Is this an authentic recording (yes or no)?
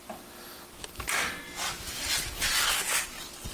yes